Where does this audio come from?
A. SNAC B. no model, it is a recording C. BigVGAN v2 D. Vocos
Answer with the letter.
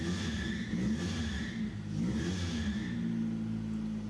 B